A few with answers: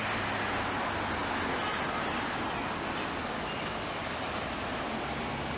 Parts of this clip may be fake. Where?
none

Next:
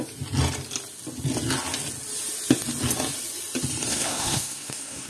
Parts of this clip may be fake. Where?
3.9-5.1 (codec, SNAC)

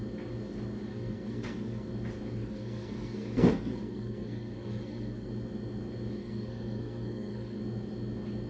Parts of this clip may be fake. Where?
0.9-1.9 (codec, SNAC); 2.4-5.3; 6.2-7.6

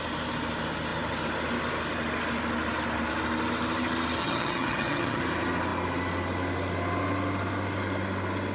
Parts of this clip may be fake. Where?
4.2-5.2 (vocoder, HiFi-GAN)

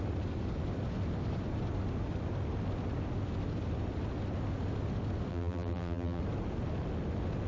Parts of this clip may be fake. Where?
5.3-6.2 (vocoder, BigVGAN v2)

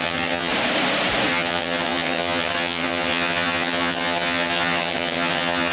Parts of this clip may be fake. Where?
0.0-0.5 (vocoder, HiFi-GAN); 1.3-5.7